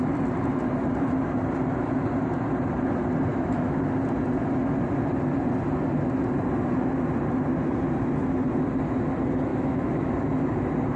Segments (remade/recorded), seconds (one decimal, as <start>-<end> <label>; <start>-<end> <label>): 0.0-3.3 recorded; 3.3-3.8 remade; 3.8-9.5 recorded; 9.5-10.1 remade; 10.1-11.0 recorded